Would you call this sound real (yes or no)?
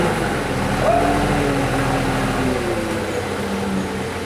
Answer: yes